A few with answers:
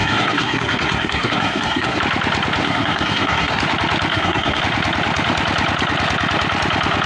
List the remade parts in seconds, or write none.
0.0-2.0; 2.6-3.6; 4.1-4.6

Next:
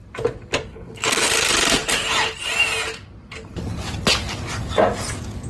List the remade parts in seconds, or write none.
0.7-1.3

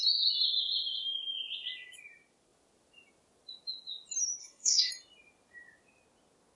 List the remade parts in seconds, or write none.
4.4-4.9

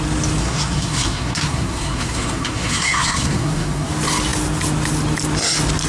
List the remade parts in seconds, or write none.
0.4-3.9

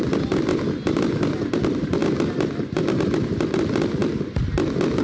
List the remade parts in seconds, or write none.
none

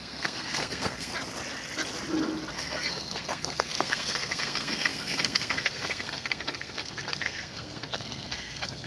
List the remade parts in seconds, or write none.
0.0-1.1; 2.5-8.9